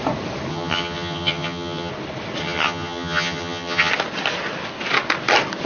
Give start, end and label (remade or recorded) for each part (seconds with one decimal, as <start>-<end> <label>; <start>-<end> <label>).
0.0-0.5 recorded; 0.5-1.9 remade; 1.9-2.4 recorded; 2.4-3.9 remade; 3.9-5.7 recorded

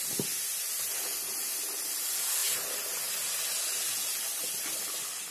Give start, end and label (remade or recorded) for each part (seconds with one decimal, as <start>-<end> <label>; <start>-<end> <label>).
0.0-5.3 recorded

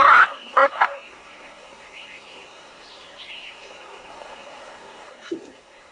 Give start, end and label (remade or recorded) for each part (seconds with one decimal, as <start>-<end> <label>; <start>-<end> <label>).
0.0-5.9 remade